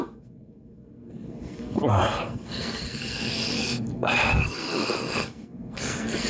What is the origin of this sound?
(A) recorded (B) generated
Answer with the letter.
B